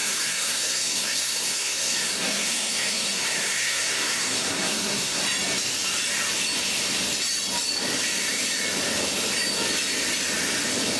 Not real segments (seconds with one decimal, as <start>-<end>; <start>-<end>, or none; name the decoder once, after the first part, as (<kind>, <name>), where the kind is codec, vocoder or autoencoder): 0.0-5.2 (codec, SNAC)